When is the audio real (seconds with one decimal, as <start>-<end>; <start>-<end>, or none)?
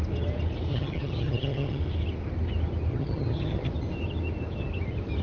0.0-0.7; 1.8-2.9; 3.7-5.2